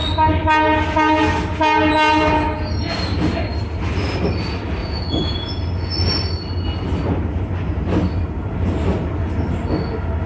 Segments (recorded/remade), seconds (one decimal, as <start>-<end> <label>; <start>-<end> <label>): 0.0-4.8 recorded; 4.8-5.6 remade; 5.6-10.3 recorded